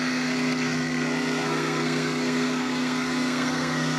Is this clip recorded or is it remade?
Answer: remade